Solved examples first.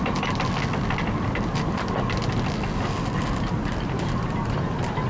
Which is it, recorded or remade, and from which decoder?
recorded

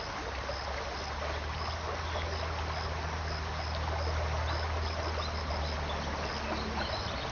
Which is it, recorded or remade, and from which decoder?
recorded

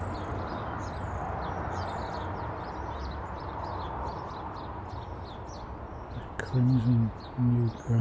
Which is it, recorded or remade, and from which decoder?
recorded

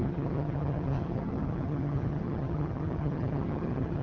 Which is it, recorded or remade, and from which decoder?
remade, vocoder, HiFi-GAN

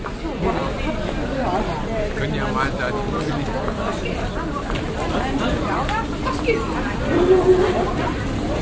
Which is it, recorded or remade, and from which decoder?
recorded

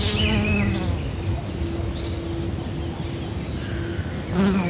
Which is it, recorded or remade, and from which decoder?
recorded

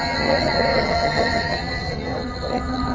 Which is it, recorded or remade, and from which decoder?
remade, vocoder, HiFi-GAN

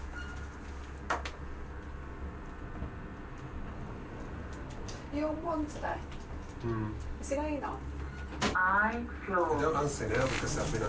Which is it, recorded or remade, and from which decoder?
recorded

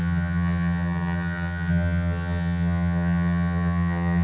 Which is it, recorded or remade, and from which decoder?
remade, vocoder, HiFi-GAN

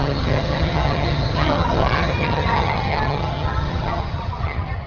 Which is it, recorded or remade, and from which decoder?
remade, vocoder, HiFi-GAN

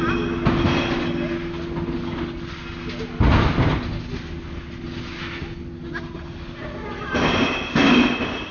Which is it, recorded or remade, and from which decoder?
recorded